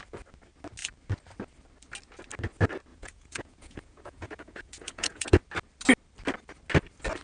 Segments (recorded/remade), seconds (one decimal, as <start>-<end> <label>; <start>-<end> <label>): 0.0-2.9 recorded; 2.9-5.4 remade; 5.4-7.2 recorded